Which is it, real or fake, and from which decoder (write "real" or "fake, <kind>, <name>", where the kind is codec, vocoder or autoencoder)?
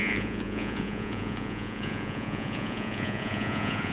fake, vocoder, Vocos